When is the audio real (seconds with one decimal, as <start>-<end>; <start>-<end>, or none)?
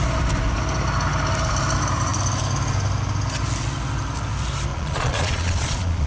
0.0-4.7